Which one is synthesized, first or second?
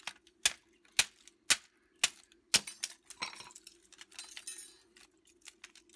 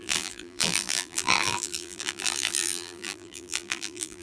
second